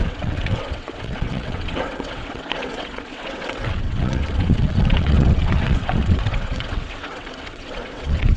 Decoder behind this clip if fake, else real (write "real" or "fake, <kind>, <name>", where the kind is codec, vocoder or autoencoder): fake, vocoder, WaveNeXt